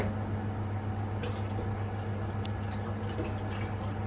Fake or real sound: real